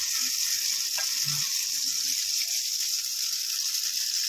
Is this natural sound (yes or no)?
yes